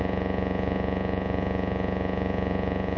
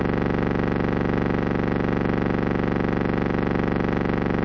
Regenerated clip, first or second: first